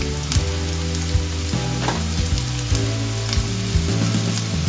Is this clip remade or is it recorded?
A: recorded